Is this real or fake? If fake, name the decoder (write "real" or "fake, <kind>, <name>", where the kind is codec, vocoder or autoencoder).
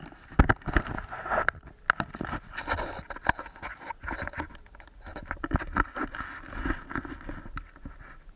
real